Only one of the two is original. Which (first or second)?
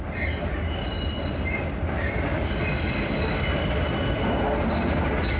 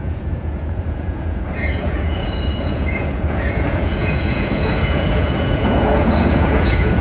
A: first